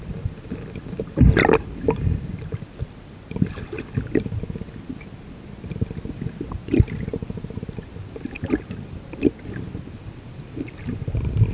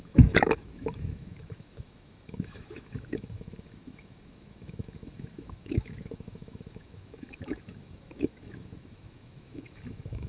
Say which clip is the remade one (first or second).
second